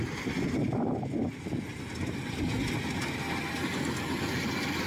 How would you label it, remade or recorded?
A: recorded